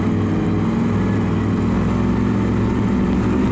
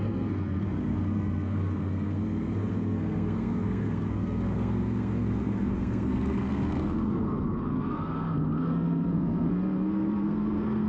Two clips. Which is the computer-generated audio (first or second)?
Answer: second